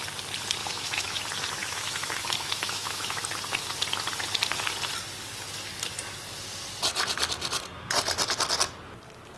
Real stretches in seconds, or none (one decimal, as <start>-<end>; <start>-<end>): 0.0-0.6; 1.2-1.6; 3.2-9.4